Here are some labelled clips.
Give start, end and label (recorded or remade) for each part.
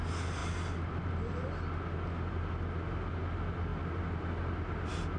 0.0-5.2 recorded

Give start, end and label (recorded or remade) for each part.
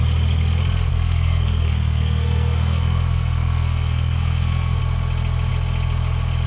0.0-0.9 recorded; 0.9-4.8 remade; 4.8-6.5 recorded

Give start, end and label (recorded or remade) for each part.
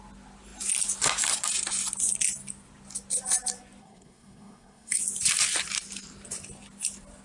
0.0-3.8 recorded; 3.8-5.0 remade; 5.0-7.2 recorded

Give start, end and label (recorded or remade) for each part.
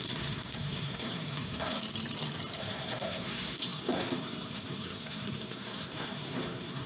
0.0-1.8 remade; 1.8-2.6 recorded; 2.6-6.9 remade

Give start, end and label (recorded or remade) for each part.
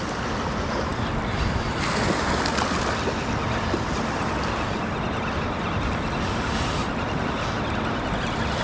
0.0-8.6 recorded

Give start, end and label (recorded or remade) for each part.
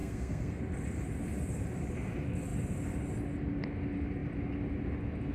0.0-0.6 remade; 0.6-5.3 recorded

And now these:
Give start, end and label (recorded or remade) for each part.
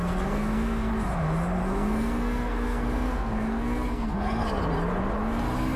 0.0-0.9 remade; 0.9-1.6 recorded; 1.6-4.6 remade; 4.6-5.8 recorded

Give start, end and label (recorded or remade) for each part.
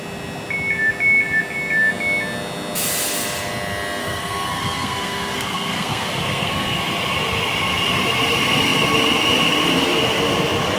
0.0-4.0 recorded; 4.0-6.8 remade; 6.8-10.8 recorded